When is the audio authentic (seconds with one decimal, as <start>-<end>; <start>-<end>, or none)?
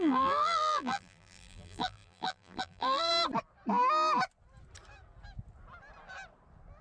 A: 3.1-6.8